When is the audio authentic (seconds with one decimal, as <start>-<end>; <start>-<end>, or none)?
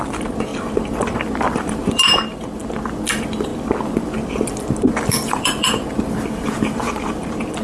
3.5-4.9